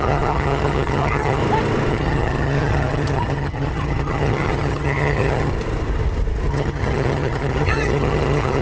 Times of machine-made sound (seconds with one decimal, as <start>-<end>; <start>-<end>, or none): 0.0-1.4; 1.9-5.5; 6.5-8.6